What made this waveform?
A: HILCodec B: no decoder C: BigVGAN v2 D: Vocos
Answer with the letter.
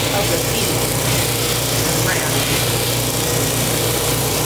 C